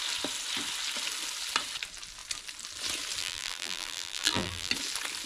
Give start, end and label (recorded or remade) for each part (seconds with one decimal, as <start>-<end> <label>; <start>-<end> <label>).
0.0-3.2 recorded; 3.2-4.7 remade; 4.7-5.3 recorded